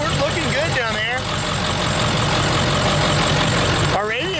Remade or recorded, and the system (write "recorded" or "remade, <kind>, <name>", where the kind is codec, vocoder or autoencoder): recorded